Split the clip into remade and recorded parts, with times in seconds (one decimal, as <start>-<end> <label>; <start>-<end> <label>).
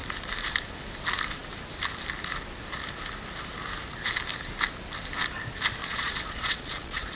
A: 0.0-5.8 recorded; 5.8-7.2 remade